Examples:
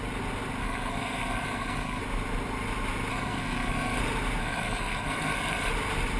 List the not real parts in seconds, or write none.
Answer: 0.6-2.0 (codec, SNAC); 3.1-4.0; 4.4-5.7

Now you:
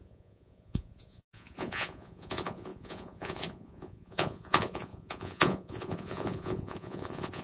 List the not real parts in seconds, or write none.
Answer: 0.0-7.4 (vocoder, Vocos)